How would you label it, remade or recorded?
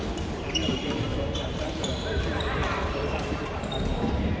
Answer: remade